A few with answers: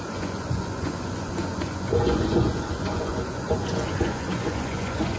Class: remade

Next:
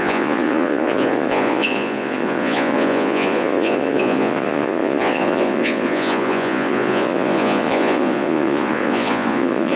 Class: remade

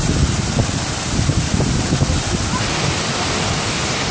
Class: recorded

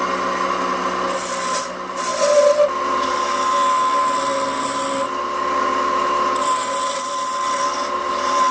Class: recorded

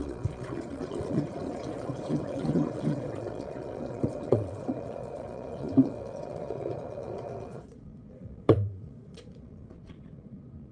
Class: remade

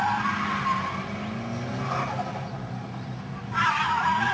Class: recorded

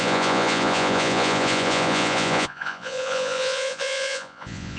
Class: remade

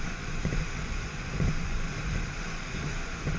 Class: remade